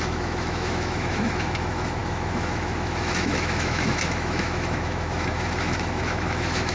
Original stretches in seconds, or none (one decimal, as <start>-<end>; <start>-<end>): none